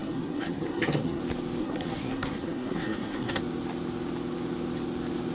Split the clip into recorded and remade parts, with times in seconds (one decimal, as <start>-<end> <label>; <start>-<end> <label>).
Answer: 0.0-1.2 remade; 1.2-1.6 recorded; 1.6-3.4 remade; 3.4-5.3 recorded